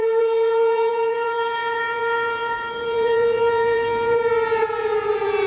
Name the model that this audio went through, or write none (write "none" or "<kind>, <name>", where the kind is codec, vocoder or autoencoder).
vocoder, Vocos